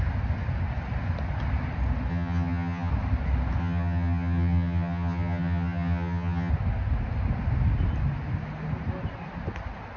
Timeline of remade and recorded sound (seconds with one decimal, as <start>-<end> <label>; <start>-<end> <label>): 0.0-2.1 recorded; 2.1-2.9 remade; 2.9-3.6 recorded; 3.6-6.5 remade; 6.5-10.0 recorded